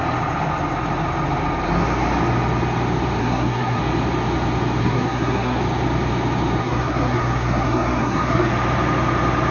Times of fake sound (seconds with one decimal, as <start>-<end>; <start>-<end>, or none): 3.2-3.8; 4.8-5.6; 6.6-8.5